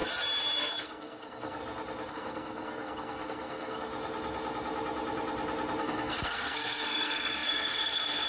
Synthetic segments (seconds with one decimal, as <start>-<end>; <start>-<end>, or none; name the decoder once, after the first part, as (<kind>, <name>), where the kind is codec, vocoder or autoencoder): 0.6-1.6 (codec, SNAC); 2.1-3.9; 5.8-8.3